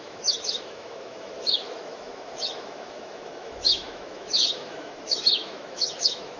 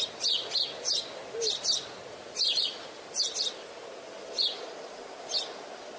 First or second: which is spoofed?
first